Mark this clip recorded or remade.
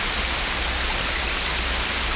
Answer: recorded